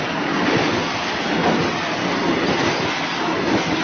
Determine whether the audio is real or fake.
real